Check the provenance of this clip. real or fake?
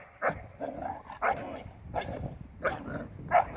real